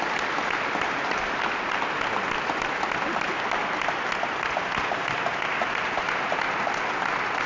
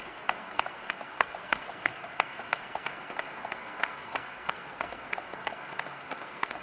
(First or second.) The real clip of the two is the first